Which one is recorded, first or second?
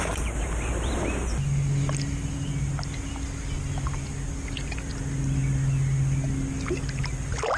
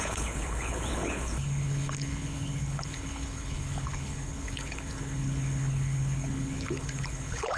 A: first